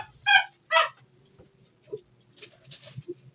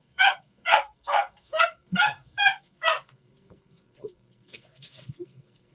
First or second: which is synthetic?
second